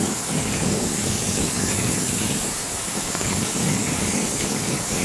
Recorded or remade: remade